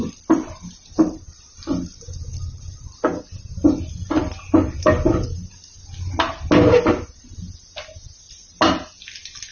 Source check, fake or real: real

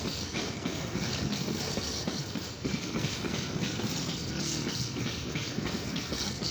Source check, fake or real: fake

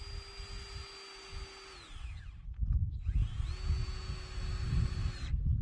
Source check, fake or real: real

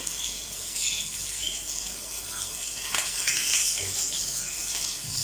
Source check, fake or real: fake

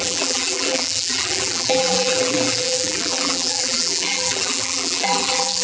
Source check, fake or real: fake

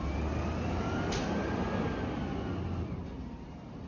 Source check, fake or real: real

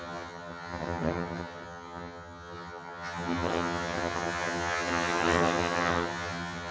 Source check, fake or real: fake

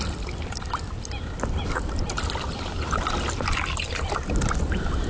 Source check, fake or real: real